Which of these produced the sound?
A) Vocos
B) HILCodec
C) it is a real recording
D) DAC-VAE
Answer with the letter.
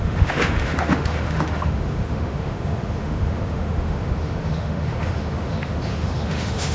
D